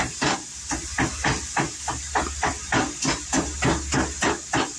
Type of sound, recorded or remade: recorded